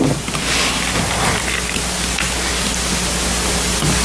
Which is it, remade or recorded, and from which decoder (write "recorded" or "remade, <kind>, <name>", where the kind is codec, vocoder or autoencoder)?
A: recorded